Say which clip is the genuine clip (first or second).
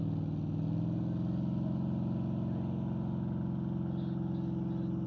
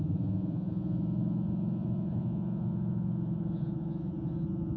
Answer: first